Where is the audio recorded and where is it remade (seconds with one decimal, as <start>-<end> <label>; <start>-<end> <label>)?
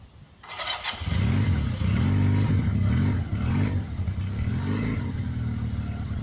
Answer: 0.0-6.2 recorded